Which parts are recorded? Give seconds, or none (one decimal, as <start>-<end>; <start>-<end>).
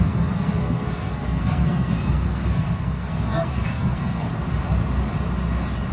4.3-5.9